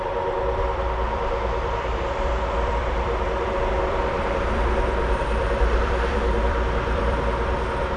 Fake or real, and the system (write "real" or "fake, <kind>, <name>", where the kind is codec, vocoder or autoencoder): fake, vocoder, BigVGAN v2